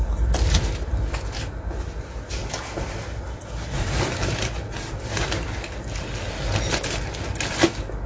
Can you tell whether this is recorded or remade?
recorded